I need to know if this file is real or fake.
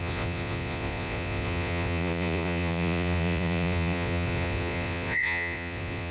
fake